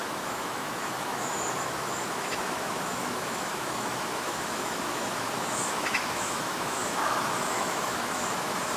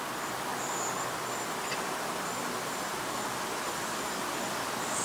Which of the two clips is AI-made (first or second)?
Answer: first